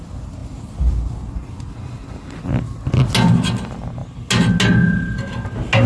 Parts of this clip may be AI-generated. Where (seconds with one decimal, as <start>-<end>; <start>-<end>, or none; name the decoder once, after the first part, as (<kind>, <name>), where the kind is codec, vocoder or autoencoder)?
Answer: none